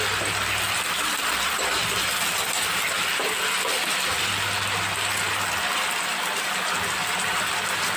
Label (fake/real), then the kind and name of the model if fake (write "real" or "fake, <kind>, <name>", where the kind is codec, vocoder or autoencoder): fake, vocoder, BigVGAN v2